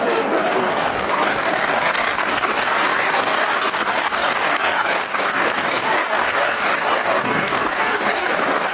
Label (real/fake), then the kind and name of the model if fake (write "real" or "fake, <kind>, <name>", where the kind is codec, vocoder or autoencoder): fake, codec, DAC